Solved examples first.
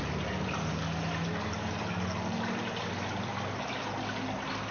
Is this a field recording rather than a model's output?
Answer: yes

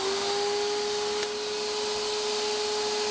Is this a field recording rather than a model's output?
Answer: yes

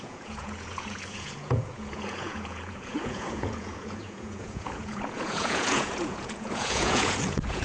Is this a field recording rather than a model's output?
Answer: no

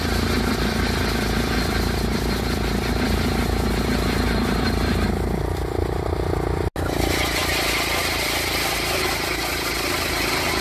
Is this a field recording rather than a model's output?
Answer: yes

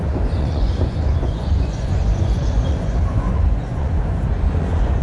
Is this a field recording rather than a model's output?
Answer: no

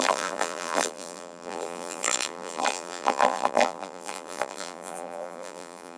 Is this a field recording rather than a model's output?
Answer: no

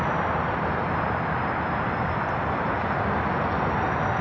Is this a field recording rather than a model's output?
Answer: yes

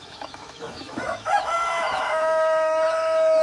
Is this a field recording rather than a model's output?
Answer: no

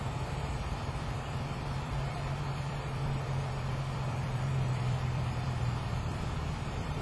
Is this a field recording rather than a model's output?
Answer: no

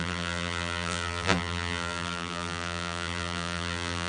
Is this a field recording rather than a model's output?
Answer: no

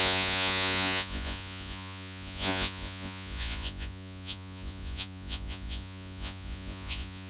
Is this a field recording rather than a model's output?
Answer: no